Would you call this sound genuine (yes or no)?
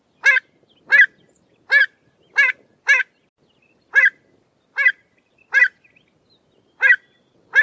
yes